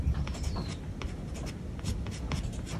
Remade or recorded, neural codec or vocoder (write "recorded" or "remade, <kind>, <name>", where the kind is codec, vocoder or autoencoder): recorded